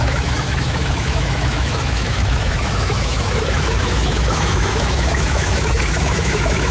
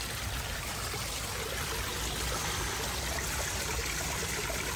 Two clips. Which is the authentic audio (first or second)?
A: second